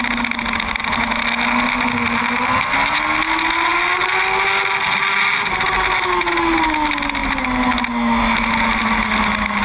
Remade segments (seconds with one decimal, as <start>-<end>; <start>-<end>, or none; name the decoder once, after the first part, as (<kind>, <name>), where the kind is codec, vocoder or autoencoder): none